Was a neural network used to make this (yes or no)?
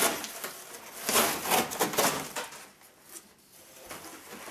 no